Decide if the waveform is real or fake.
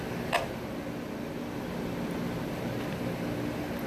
real